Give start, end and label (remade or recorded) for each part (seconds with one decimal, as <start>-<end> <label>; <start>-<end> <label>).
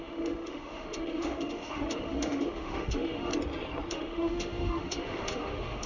0.0-3.3 remade; 3.3-3.9 recorded; 3.9-5.9 remade